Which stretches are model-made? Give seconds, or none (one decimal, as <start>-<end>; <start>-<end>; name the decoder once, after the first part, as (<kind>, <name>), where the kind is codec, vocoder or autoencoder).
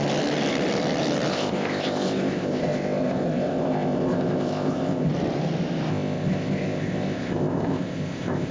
1.3-5.1 (codec, ZipCodec); 5.9-8.5